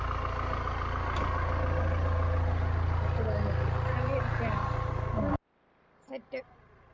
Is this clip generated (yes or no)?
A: no